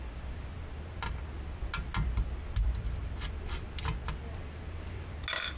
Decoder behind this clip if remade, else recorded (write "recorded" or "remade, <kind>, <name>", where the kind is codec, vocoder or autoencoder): recorded